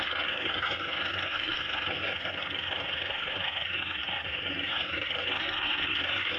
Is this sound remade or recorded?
remade